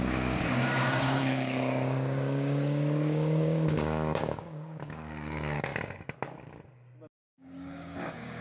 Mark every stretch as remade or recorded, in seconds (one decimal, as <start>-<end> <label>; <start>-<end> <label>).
0.0-5.7 remade; 5.7-7.2 recorded; 7.2-8.4 remade